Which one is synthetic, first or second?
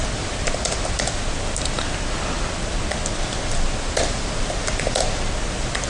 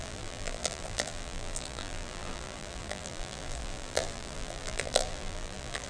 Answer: second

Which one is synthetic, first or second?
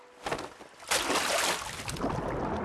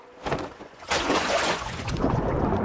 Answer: second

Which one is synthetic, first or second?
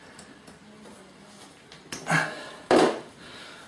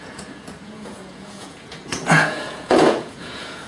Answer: second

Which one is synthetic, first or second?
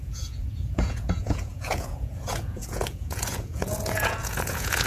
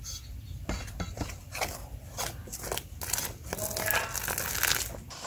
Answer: first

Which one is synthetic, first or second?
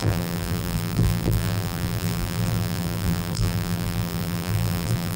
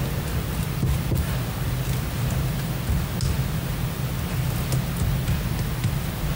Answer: first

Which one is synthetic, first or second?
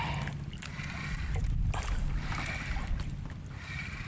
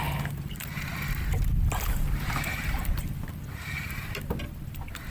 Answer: first